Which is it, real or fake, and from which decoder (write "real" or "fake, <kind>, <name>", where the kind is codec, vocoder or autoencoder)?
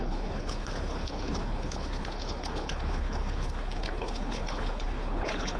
fake, codec, HILCodec